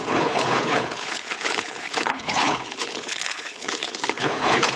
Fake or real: fake